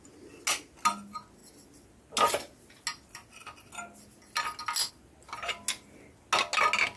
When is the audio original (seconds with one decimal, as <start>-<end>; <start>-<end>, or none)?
0.0-7.0